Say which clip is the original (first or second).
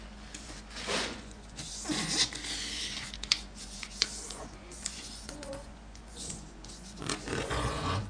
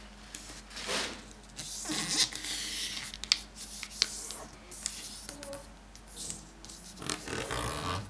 second